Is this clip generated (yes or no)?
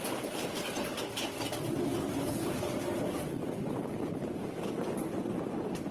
no